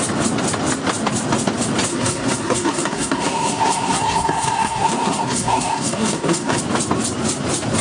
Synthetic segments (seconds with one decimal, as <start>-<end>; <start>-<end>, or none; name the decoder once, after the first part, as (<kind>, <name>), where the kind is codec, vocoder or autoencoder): 1.9-6.6 (codec, SNAC)